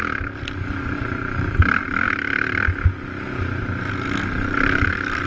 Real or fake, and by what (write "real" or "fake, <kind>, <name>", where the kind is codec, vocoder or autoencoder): real